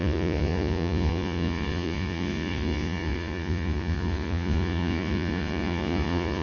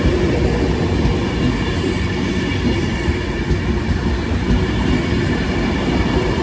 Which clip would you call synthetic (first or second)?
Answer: first